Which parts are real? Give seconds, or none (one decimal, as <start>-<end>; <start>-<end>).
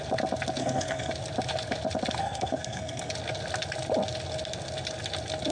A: 0.0-0.6; 1.1-2.2; 3.1-5.5